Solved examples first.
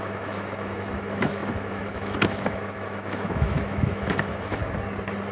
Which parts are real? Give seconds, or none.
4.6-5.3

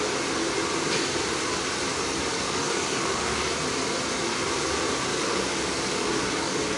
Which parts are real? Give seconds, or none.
0.0-2.3; 3.5-5.1